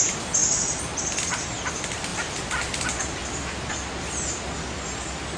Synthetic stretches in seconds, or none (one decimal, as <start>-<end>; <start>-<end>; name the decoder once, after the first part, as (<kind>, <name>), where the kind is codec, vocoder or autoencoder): 0.0-5.4 (vocoder, BigVGAN v2)